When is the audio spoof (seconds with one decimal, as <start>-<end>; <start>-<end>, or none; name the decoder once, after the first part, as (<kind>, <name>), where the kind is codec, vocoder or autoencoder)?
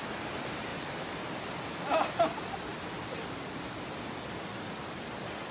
none